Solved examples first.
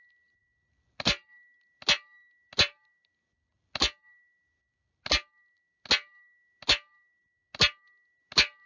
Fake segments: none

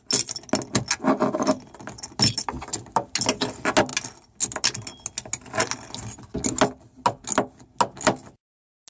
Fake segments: none

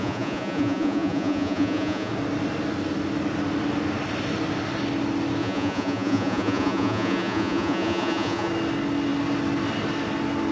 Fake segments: 0.0-2.1; 5.4-8.5